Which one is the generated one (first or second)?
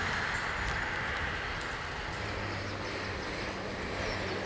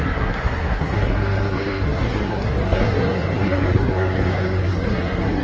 second